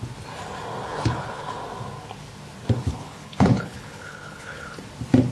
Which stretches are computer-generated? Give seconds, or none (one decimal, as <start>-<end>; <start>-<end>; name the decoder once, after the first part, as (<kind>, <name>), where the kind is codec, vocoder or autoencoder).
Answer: 0.8-1.6 (codec, HILCodec); 2.9-4.8